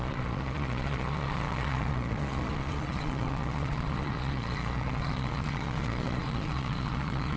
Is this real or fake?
fake